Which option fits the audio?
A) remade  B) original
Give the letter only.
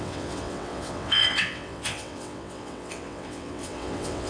A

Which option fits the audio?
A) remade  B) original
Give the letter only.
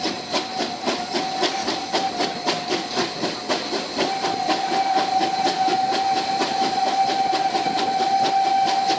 B